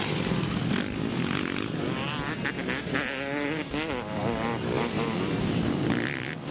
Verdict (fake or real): real